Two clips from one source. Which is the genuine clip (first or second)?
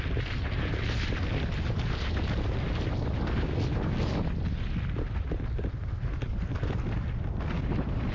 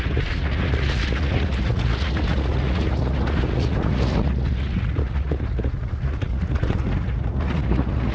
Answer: first